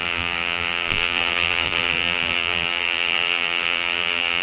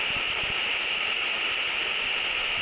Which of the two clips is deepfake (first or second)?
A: first